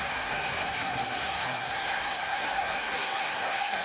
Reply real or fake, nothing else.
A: fake